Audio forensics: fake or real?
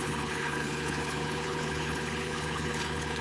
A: fake